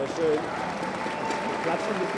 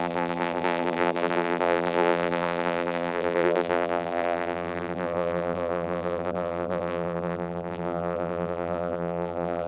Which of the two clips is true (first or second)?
first